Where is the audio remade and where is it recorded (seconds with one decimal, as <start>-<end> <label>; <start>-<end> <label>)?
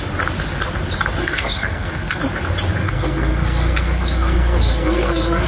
0.0-1.2 recorded; 1.2-2.2 remade; 2.2-2.8 recorded; 2.8-5.5 remade